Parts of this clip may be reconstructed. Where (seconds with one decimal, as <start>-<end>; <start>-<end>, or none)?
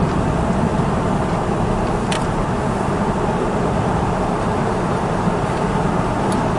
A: 0.7-1.4; 1.9-5.9